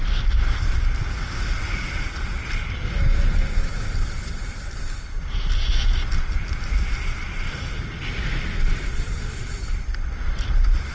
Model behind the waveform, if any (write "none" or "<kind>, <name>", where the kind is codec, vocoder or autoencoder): none